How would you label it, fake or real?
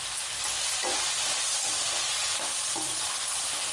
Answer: real